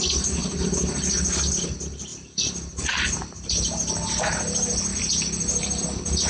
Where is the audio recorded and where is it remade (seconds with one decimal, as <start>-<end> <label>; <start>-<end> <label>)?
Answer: 0.0-2.1 recorded; 2.1-2.9 remade; 2.9-4.9 recorded; 4.9-5.8 remade; 5.8-6.3 recorded